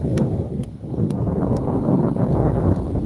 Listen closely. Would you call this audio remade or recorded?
remade